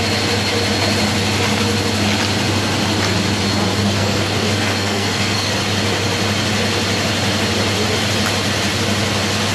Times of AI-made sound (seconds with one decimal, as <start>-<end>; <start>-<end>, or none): 3.8-5.5